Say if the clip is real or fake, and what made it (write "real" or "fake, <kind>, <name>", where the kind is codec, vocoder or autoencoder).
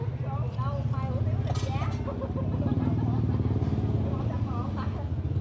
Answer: real